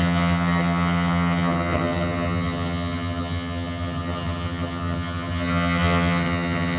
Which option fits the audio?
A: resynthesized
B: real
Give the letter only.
A